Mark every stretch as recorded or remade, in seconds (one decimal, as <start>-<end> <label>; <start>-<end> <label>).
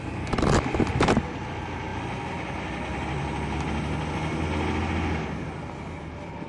0.0-6.5 recorded